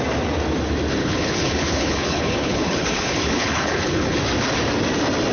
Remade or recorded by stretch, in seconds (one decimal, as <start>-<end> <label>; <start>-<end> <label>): 0.0-1.0 recorded; 1.0-4.2 remade; 4.2-5.3 recorded